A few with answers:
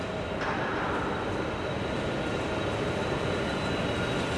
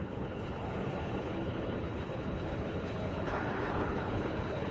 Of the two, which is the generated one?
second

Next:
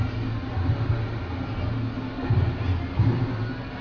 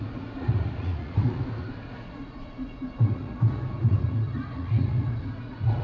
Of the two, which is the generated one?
second